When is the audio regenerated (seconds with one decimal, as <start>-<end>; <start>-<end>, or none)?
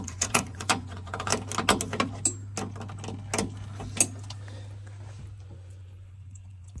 0.0-1.3; 5.4-6.8